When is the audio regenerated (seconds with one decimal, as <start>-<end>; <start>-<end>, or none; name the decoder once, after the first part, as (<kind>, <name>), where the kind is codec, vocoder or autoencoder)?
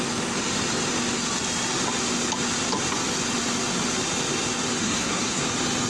4.8-5.4 (codec, SNAC)